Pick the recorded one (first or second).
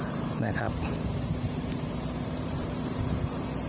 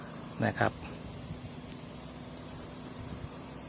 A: second